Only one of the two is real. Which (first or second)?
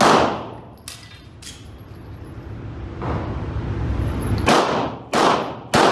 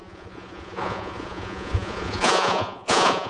first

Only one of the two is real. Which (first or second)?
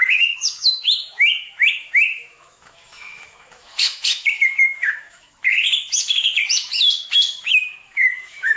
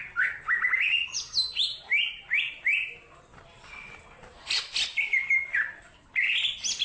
second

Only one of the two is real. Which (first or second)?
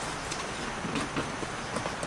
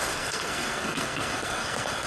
first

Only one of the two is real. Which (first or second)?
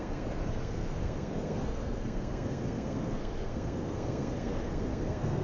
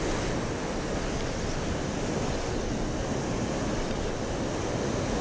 second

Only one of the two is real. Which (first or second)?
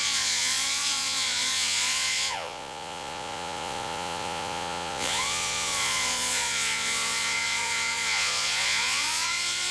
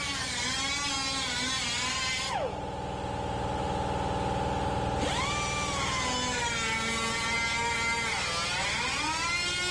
second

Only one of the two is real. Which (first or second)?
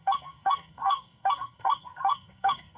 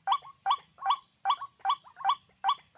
second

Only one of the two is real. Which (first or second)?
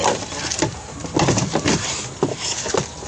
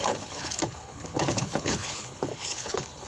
first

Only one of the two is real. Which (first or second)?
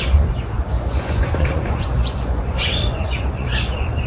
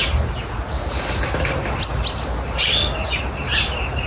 second